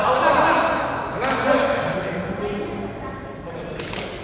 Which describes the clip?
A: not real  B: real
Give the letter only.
B